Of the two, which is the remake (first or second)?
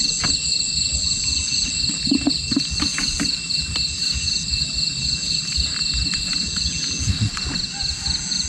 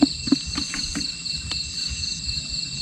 second